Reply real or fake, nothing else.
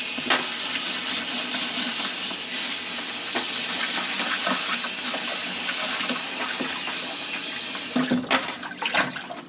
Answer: real